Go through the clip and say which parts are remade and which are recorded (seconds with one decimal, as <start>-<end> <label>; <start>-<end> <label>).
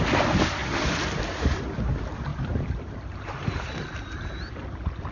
0.0-2.3 recorded; 2.3-3.7 remade; 3.7-5.1 recorded